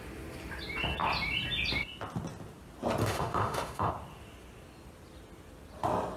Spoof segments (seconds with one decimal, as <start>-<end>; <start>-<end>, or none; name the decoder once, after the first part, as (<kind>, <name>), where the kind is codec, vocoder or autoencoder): 3.0-3.9 (autoencoder, DAC-VAE)